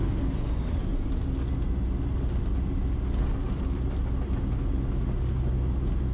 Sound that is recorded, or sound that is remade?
recorded